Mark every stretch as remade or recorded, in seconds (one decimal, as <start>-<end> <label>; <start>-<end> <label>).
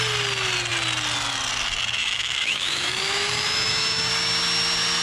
0.0-2.0 recorded; 2.0-4.1 remade; 4.1-5.0 recorded